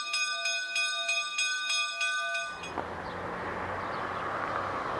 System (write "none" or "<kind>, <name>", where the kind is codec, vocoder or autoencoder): none